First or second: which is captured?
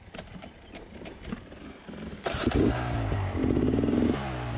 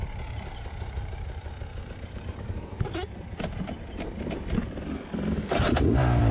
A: second